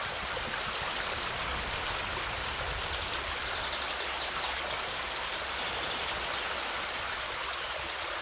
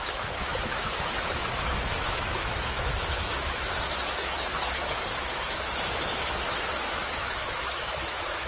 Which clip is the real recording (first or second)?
first